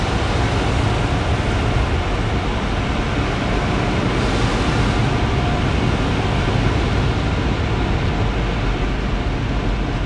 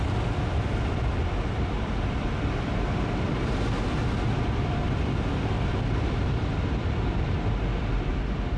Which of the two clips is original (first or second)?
first